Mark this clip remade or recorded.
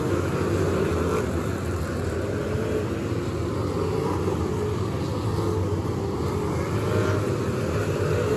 recorded